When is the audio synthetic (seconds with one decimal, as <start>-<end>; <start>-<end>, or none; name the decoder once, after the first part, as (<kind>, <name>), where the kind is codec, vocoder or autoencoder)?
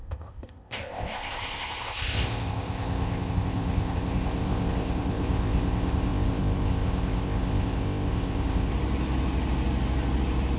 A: 0.0-8.7 (codec, ZipCodec)